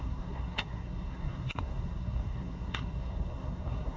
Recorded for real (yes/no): no